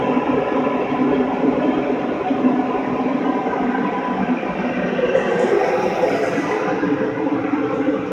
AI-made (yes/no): no